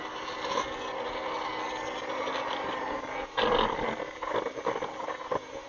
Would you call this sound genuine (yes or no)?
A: yes